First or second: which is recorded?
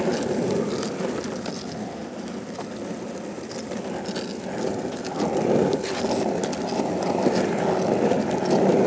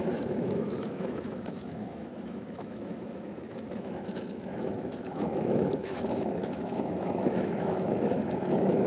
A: first